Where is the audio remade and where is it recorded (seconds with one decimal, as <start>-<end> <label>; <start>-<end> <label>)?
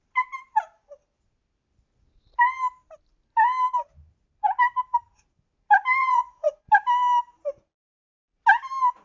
0.0-6.0 recorded; 6.0-6.7 remade; 6.7-9.0 recorded